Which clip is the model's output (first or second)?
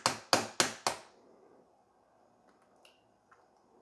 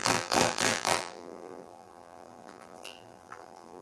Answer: second